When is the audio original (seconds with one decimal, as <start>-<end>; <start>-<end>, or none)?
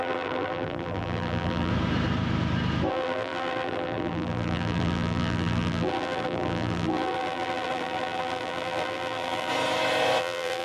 1.7-2.9; 9.5-10.2